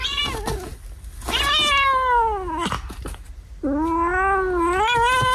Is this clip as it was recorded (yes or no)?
yes